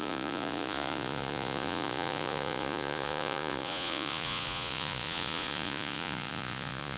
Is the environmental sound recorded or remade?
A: remade